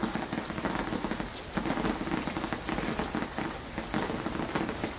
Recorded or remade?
recorded